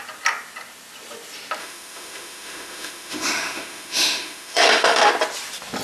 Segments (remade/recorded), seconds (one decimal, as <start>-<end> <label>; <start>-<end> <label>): 0.0-1.6 recorded; 1.6-5.1 remade; 5.1-5.8 recorded

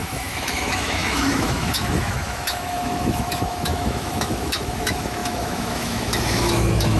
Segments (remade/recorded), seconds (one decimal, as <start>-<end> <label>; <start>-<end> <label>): 0.0-7.0 remade

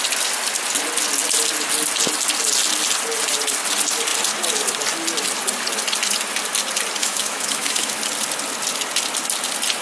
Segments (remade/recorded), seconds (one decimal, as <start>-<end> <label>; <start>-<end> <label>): 0.0-7.0 recorded; 7.0-8.0 remade; 8.0-9.8 recorded

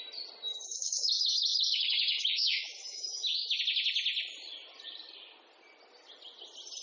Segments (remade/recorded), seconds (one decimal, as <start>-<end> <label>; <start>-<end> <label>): 0.0-0.5 recorded; 0.5-3.6 remade; 3.6-6.8 recorded